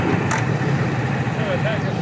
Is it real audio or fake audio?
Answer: real